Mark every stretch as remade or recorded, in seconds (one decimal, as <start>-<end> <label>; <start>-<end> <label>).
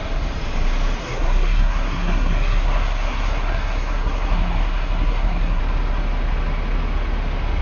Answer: 0.0-1.0 recorded; 1.0-5.6 remade; 5.6-7.6 recorded